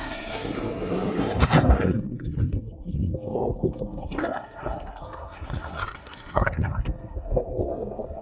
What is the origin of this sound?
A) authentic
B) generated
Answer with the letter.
B